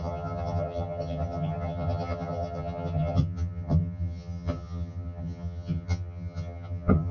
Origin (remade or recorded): remade